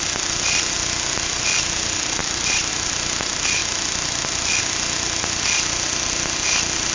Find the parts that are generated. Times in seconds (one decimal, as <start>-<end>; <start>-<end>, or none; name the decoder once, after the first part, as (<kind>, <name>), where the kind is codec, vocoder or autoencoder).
2.2-2.7 (vocoder, BigVGAN v2)

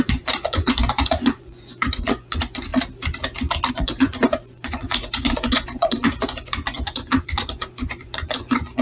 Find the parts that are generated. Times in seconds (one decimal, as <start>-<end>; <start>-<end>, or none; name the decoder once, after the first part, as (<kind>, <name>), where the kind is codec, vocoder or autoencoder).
0.0-2.7 (vocoder, Vocos); 3.7-8.8

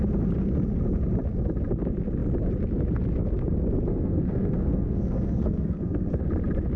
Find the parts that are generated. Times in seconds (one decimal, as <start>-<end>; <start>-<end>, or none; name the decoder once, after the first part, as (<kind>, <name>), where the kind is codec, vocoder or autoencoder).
3.9-6.2 (codec, SNAC)

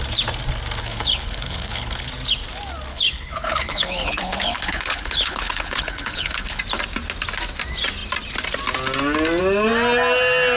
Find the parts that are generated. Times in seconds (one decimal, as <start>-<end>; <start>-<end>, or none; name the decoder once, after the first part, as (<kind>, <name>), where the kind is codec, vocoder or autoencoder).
0.8-2.1 (codec, HILCodec); 2.9-6.6

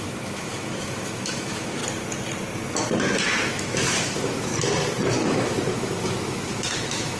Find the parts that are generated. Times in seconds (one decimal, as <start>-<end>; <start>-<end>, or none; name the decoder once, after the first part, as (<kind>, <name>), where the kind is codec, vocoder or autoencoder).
0.0-1.8 (autoencoder, DAC-VAE); 3.5-4.5; 5.1-7.2

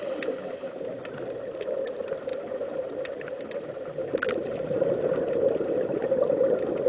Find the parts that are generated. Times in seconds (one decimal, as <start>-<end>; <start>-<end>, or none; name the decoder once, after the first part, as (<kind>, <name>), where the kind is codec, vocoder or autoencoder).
none